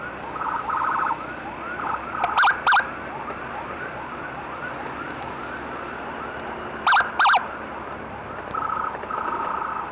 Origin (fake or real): real